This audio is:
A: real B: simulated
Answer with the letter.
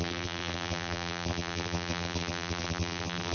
B